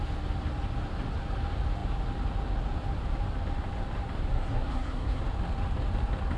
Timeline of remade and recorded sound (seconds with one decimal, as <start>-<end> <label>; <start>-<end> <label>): 0.0-4.3 recorded; 4.3-5.2 remade; 5.2-6.4 recorded